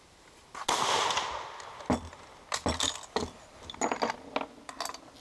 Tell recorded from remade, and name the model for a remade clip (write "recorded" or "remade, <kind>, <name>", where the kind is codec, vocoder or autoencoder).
recorded